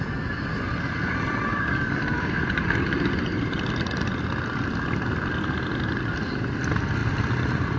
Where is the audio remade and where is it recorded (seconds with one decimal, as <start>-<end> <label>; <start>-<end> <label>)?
0.0-1.5 recorded; 1.5-3.7 remade; 3.7-7.0 recorded; 7.0-7.8 remade